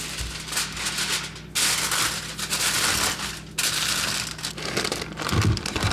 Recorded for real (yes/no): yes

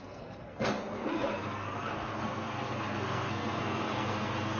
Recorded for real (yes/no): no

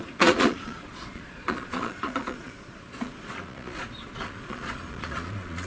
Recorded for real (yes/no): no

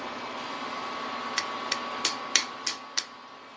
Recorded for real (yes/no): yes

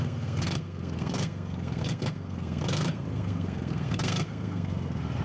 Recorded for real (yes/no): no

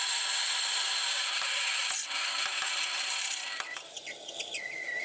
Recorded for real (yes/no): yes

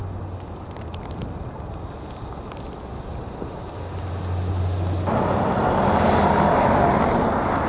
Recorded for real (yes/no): yes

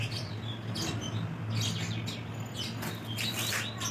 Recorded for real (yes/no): yes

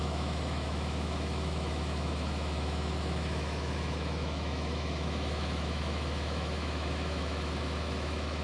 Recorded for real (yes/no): no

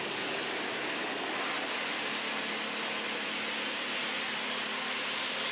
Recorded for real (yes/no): yes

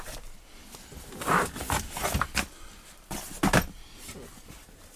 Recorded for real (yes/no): yes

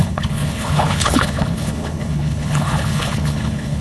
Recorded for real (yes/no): no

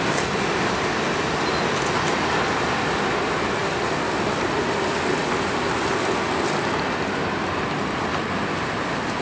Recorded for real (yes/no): yes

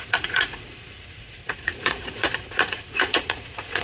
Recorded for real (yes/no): no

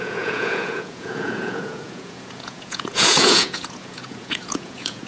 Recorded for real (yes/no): no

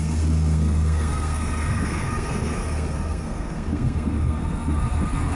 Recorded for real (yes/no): no